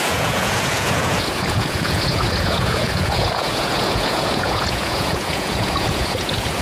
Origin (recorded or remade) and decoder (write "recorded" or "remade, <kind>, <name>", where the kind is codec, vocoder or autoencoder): remade, vocoder, Vocos